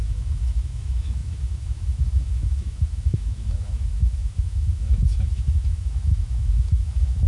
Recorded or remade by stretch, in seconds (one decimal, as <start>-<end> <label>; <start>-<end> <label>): 0.0-7.3 remade